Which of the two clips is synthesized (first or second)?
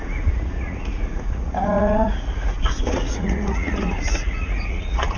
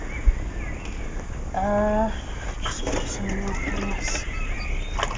first